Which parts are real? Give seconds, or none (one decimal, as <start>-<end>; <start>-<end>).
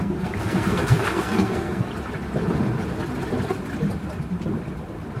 1.9-5.2